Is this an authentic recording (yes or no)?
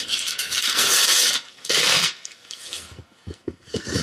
no